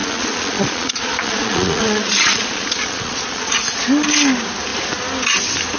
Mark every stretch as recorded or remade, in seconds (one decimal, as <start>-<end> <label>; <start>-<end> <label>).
0.0-3.5 remade; 3.5-5.8 recorded